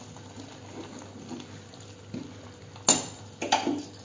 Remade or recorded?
recorded